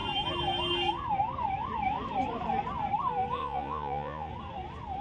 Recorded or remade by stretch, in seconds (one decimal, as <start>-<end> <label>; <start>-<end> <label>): 0.0-3.4 recorded; 3.4-4.3 remade; 4.3-5.0 recorded